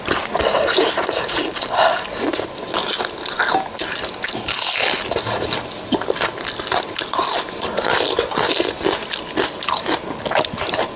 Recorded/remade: recorded